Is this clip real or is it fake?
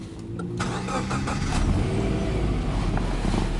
real